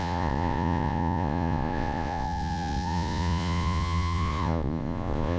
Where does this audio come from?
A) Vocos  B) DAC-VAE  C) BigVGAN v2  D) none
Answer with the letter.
A